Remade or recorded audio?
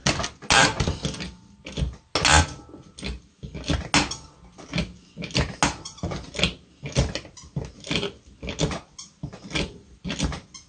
recorded